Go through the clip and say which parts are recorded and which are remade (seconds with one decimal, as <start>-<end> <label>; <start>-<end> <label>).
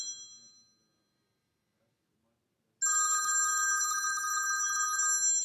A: 0.0-5.4 recorded